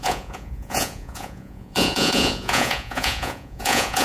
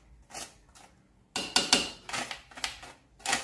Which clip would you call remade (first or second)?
first